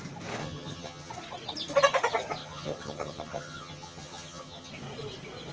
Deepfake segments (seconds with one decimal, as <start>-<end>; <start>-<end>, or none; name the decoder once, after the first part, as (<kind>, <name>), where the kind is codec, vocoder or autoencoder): 0.4-1.1 (vocoder, HiFi-GAN); 2.4-4.7